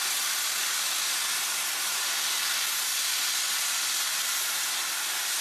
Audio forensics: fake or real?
real